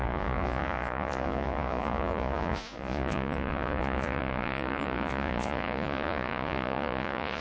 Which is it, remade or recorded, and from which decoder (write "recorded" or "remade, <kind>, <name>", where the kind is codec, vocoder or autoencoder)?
remade, vocoder, Vocos